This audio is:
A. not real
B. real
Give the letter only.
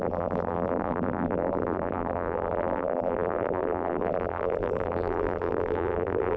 A